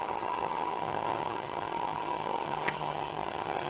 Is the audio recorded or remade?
remade